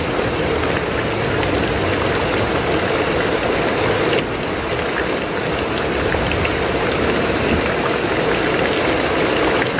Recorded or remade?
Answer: recorded